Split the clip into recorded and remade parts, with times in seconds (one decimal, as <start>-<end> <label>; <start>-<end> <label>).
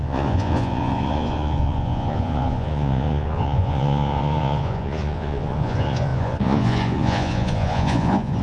0.0-8.4 remade